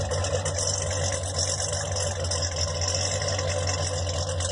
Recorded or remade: recorded